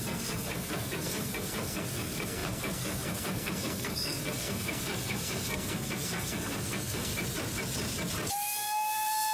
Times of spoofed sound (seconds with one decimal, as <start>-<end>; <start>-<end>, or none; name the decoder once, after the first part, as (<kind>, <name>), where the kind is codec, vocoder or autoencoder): 0.0-7.1 (codec, SNAC); 8.3-9.3